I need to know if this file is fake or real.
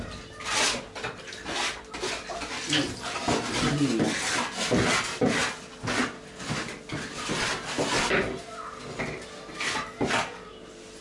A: real